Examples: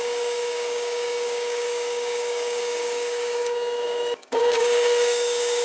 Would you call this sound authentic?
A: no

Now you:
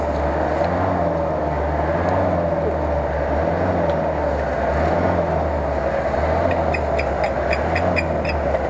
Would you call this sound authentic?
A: yes